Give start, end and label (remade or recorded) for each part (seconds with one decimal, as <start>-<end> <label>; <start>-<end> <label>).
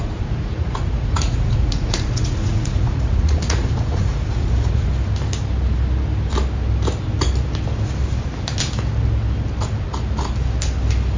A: 0.0-4.9 remade; 4.9-11.2 recorded